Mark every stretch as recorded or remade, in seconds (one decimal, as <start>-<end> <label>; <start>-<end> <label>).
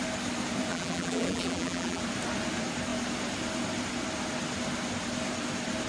0.0-0.7 recorded; 0.7-2.0 remade; 2.0-5.9 recorded